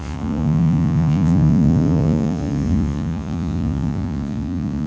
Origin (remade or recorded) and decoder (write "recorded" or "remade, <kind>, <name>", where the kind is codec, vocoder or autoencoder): remade, vocoder, Vocos